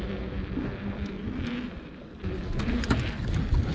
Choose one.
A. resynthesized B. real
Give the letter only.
B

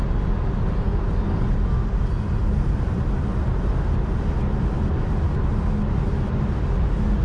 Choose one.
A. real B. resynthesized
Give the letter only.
A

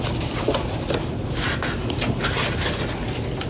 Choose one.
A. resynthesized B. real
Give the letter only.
B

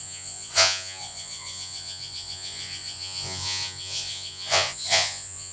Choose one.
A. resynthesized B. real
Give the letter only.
A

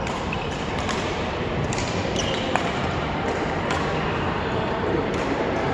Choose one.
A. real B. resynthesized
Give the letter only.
B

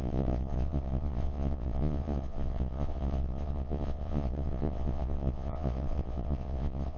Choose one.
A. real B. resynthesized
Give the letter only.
B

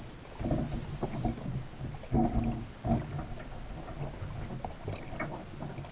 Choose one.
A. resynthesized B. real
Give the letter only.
B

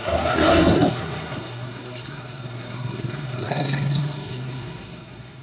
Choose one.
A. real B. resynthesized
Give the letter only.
B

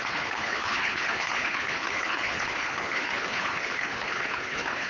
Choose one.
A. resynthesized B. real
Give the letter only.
A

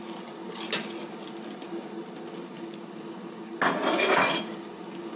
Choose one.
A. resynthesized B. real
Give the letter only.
B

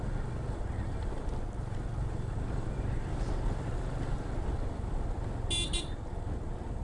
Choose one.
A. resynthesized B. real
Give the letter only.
B